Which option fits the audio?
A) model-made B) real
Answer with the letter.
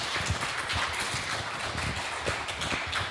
B